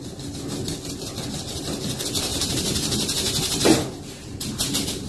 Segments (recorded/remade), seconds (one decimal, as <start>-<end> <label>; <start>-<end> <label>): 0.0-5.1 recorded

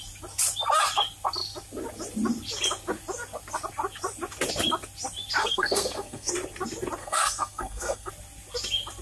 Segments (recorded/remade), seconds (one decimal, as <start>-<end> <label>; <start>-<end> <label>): 0.0-5.4 recorded; 5.4-6.3 remade; 6.3-7.0 recorded; 7.0-8.1 remade; 8.1-9.0 recorded

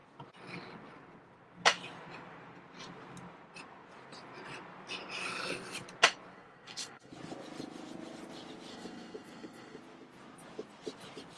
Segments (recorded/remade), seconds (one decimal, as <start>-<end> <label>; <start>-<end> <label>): 0.0-6.3 recorded; 6.3-7.1 remade; 7.1-8.7 recorded; 8.7-9.8 remade; 9.8-11.4 recorded